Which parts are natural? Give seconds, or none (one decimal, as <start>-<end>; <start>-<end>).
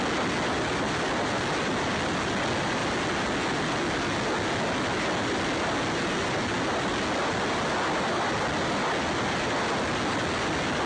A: 0.0-10.9